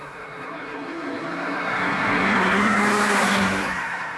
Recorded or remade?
remade